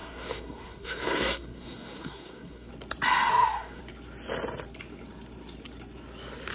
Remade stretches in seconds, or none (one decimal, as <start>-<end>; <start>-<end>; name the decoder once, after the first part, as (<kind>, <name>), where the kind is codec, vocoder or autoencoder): 0.0-2.7 (codec, SNAC); 3.3-3.8